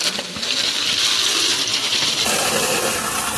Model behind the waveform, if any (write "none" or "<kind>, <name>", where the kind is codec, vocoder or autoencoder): none